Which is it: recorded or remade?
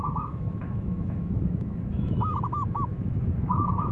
remade